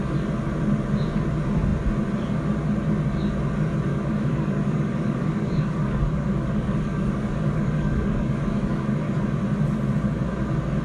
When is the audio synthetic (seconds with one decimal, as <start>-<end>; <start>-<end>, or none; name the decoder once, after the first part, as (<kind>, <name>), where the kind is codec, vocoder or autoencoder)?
3.9-9.1 (codec, DAC)